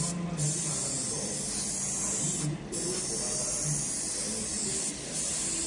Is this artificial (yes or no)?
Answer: no